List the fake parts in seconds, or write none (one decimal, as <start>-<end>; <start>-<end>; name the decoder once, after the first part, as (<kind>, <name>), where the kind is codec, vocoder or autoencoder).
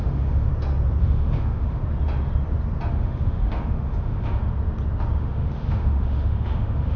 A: 0.0-0.5 (autoencoder, DAC-VAE); 1.0-1.8; 2.9-4.4; 5.2-7.0